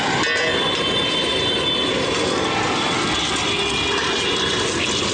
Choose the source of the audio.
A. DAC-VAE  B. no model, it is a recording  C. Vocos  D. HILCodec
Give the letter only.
B